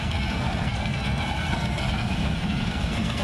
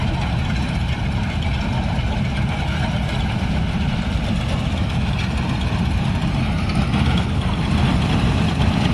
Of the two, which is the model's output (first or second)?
first